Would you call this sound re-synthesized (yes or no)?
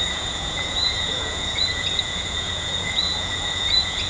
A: yes